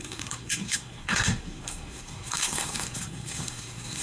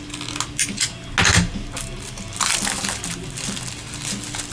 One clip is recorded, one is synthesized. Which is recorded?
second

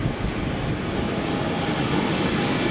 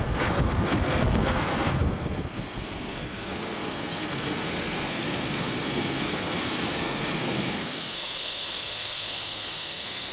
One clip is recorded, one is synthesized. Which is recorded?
first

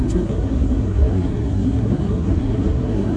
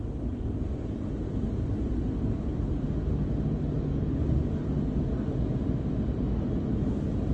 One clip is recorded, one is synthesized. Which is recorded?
second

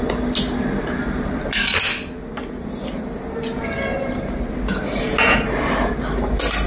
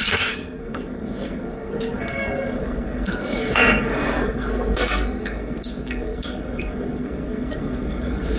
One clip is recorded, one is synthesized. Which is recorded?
first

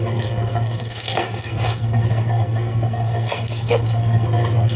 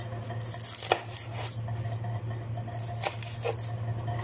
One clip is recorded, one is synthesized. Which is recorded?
second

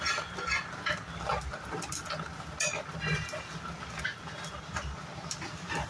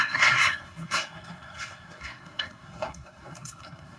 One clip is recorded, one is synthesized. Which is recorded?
first